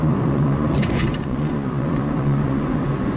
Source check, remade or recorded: remade